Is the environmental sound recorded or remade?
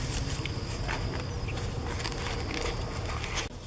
recorded